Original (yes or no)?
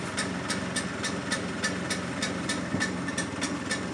yes